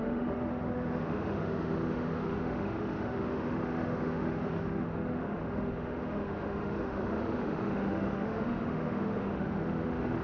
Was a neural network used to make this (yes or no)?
yes